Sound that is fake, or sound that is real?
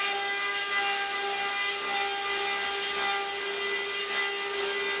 real